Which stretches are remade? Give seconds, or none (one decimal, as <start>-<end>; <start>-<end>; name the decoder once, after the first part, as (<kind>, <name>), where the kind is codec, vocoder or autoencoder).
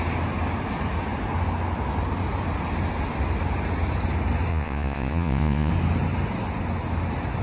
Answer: 4.5-5.7 (vocoder, Vocos)